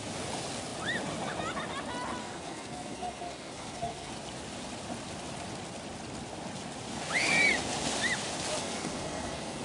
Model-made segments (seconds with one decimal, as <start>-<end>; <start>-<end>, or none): 2.2-4.1; 8.6-9.6